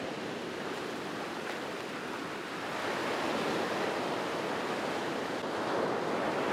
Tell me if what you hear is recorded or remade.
recorded